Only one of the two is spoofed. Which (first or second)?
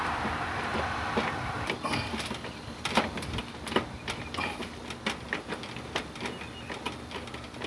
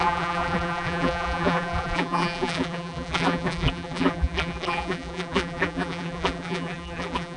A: second